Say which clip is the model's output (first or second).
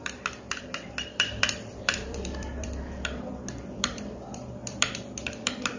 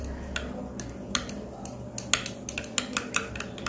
first